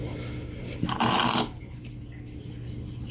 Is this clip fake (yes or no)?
no